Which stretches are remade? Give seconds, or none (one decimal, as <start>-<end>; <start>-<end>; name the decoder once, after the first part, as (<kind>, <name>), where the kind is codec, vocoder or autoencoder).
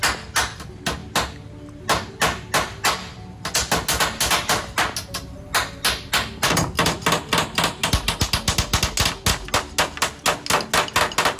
none